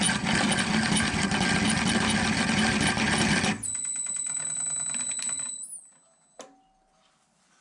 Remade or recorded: recorded